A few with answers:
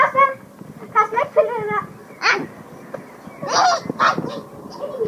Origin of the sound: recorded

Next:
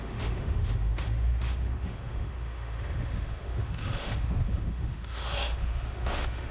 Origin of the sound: remade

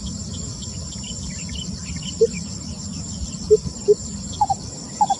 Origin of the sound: recorded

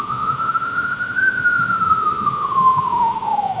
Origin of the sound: remade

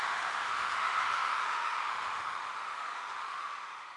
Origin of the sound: remade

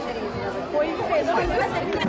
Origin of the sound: recorded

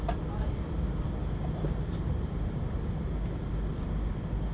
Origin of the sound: recorded